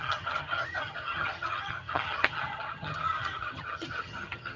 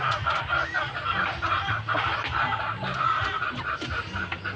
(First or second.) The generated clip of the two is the first